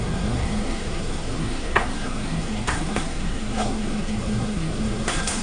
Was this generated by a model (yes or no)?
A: yes